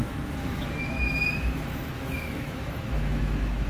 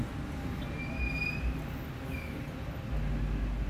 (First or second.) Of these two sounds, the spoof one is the first